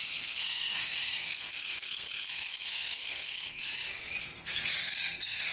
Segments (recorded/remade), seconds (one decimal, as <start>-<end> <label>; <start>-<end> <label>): 0.0-3.7 remade; 3.7-4.2 recorded; 4.2-5.5 remade